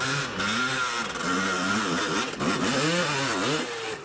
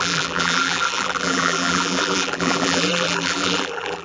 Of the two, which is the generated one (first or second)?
second